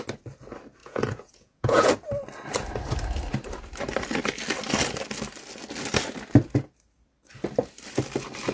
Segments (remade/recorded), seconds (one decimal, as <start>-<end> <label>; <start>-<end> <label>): 0.0-0.8 recorded; 0.8-1.9 remade; 1.9-8.5 recorded